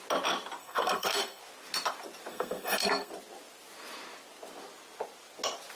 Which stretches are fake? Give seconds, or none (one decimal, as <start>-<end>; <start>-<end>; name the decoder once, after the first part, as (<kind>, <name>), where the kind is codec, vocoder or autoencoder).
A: 0.6-1.4 (codec, SNAC); 2.3-3.1